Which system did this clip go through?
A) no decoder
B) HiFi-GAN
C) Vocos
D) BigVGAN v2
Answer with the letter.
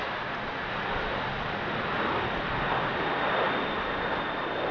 A